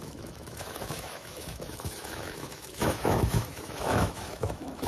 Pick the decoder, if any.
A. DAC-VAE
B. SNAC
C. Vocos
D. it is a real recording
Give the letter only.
A